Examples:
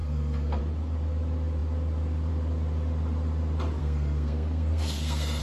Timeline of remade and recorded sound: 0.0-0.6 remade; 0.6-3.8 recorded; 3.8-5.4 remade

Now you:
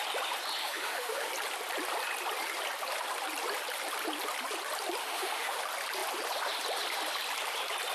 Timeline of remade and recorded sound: 0.0-0.6 recorded; 0.6-1.3 remade; 1.3-5.0 recorded; 5.0-5.6 remade; 5.6-7.9 recorded

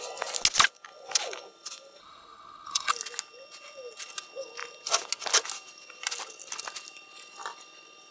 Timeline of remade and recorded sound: 0.0-2.0 recorded; 2.0-2.9 remade; 2.9-8.1 recorded

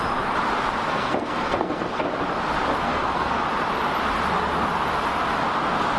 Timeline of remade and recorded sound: 0.0-0.9 recorded; 0.9-2.0 remade; 2.0-2.8 recorded; 2.8-3.4 remade; 3.4-6.0 recorded

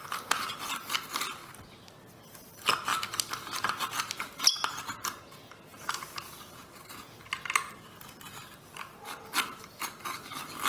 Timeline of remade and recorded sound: 0.0-1.4 recorded; 1.4-2.2 remade; 2.2-5.7 recorded; 5.7-10.7 remade

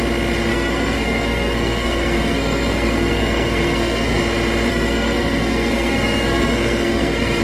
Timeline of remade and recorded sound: 0.0-0.5 recorded; 0.5-4.2 remade; 4.2-4.7 recorded; 4.7-7.4 remade